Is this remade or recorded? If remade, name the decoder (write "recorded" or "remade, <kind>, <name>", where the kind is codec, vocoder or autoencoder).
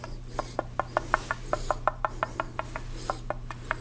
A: recorded